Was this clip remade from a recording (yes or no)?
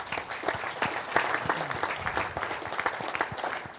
no